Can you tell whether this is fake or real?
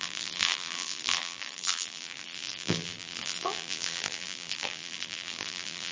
fake